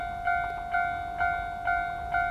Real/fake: real